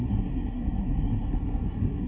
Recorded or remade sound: remade